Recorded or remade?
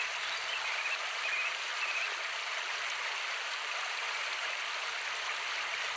recorded